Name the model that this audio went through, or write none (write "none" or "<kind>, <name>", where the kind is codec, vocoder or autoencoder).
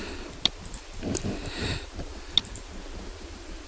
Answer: none